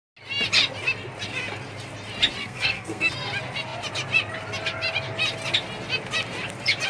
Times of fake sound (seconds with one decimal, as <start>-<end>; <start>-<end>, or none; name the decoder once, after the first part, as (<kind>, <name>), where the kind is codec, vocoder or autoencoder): 2.4-3.1 (codec, SNAC)